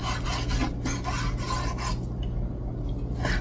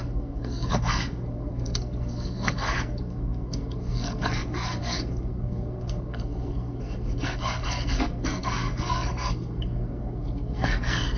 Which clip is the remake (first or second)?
second